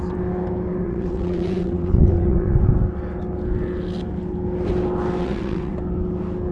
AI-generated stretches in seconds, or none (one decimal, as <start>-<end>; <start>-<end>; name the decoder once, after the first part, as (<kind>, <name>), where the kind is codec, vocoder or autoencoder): 0.8-2.7 (vocoder, WaveNeXt); 5.2-5.7